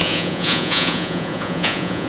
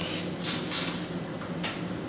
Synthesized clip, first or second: first